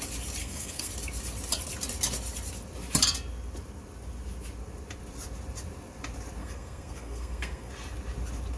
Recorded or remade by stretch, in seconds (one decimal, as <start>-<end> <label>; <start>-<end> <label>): 0.0-0.4 recorded; 0.4-0.9 remade; 0.9-6.4 recorded; 6.4-7.7 remade; 7.7-8.6 recorded